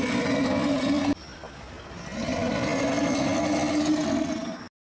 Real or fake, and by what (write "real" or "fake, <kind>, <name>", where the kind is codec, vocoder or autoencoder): real